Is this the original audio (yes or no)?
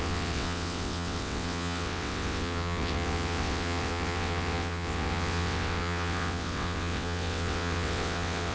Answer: no